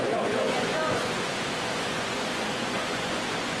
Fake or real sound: fake